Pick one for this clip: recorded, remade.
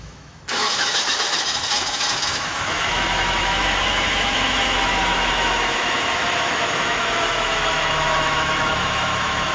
remade